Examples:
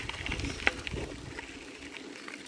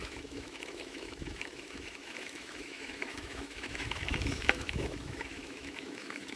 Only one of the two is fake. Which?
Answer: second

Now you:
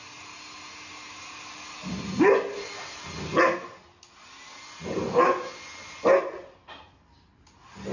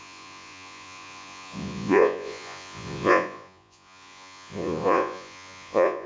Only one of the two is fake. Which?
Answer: second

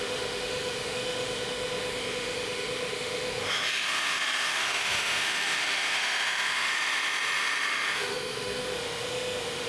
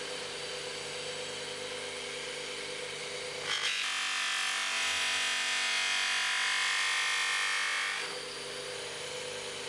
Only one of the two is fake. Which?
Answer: first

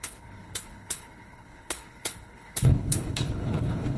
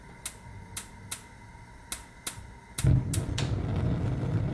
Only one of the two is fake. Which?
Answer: first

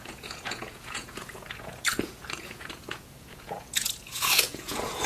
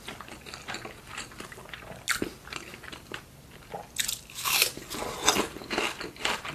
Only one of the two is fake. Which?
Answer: first